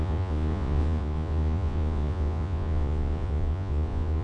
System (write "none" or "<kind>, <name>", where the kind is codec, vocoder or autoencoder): vocoder, Vocos